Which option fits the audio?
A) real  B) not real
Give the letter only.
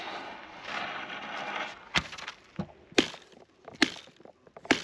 A